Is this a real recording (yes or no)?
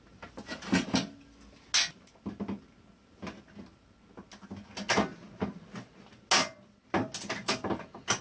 yes